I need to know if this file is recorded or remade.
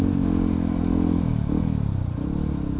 recorded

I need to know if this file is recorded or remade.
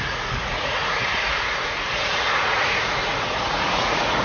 remade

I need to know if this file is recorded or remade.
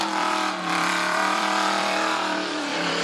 remade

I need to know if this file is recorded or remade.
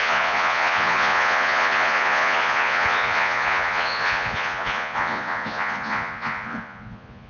remade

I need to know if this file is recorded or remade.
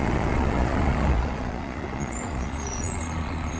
remade